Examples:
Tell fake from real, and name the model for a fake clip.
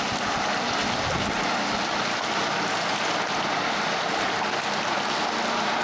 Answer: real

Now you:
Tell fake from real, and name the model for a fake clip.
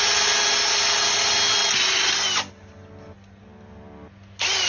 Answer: real